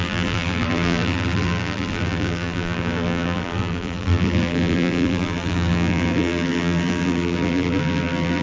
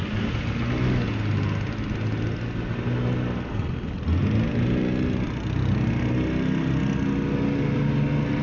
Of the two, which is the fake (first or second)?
first